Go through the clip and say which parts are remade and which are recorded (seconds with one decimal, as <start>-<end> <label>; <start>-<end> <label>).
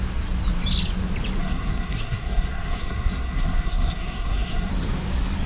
0.0-1.4 recorded; 1.4-4.7 remade; 4.7-5.5 recorded